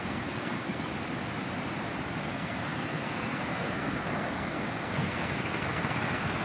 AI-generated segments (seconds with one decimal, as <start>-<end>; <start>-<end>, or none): 0.0-0.9; 2.3-6.4